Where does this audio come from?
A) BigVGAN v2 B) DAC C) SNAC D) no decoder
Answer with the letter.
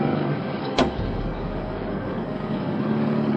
B